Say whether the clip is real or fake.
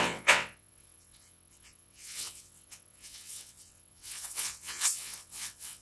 fake